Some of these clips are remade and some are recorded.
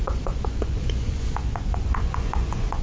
remade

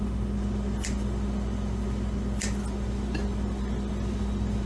recorded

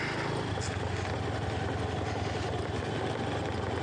recorded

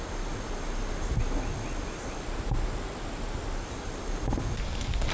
recorded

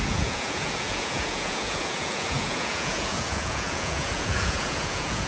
remade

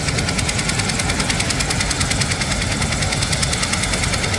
recorded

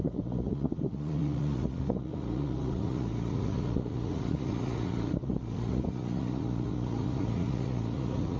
remade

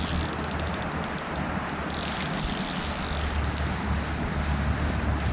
recorded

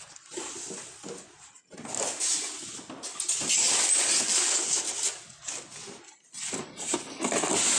recorded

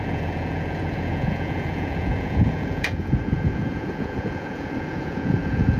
remade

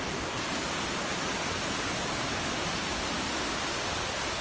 recorded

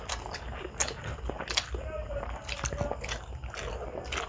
recorded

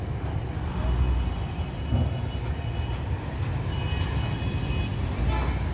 recorded